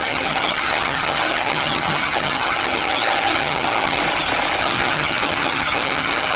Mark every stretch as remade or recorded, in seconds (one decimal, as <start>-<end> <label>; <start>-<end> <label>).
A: 0.0-4.0 remade; 4.0-4.6 recorded; 4.6-6.4 remade